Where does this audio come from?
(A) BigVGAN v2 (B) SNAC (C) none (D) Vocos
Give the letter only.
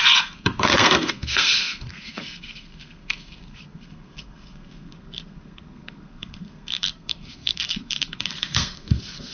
B